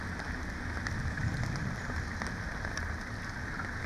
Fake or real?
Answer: real